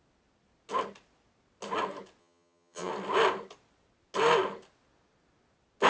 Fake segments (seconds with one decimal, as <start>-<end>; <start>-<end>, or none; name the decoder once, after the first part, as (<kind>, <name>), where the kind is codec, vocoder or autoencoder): 2.2-2.9 (vocoder, HiFi-GAN)